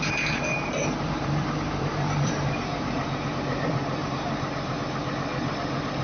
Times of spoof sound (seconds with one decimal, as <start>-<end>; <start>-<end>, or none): 0.5-3.3; 4.0-4.8